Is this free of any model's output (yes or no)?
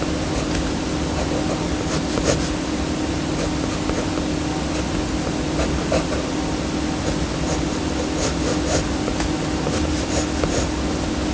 yes